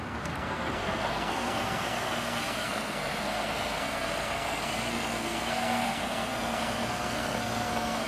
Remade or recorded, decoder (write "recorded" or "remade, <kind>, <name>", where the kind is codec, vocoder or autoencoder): remade, codec, SNAC